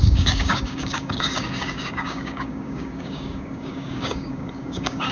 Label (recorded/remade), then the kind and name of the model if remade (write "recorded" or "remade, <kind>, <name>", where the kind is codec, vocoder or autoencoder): remade, codec, DAC